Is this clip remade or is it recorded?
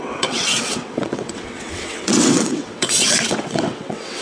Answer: remade